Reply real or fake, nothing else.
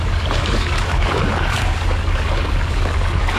fake